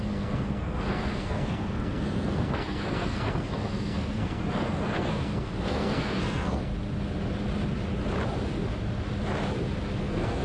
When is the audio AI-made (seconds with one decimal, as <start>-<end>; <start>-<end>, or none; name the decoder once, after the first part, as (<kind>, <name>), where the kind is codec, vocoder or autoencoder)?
0.0-6.7 (codec, SNAC); 10.0-10.4